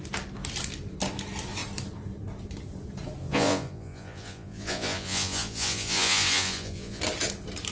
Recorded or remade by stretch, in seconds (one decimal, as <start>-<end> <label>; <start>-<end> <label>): 0.0-3.2 recorded; 3.2-7.0 remade; 7.0-7.7 recorded